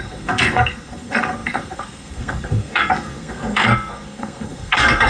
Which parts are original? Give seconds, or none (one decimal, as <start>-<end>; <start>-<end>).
none